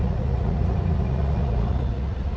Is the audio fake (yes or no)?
yes